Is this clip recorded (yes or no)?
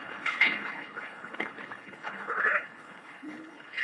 no